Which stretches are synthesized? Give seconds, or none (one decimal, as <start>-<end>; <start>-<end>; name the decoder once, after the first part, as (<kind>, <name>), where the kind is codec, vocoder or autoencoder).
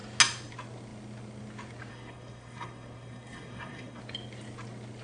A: 1.9-4.0 (codec, SNAC)